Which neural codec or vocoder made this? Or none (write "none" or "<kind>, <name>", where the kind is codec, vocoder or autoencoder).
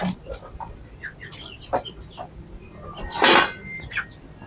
none